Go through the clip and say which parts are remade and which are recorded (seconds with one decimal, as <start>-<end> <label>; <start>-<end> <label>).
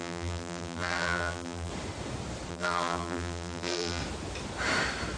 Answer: 0.0-1.7 remade; 1.7-2.5 recorded; 2.5-4.0 remade; 4.0-5.2 recorded